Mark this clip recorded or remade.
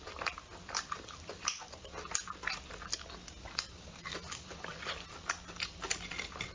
recorded